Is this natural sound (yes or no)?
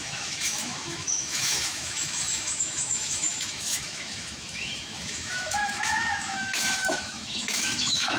no